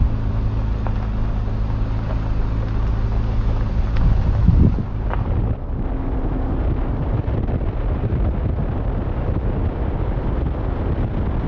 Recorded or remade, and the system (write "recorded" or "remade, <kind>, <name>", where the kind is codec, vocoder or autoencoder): recorded